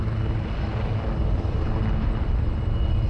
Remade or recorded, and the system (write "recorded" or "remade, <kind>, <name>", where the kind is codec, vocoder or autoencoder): recorded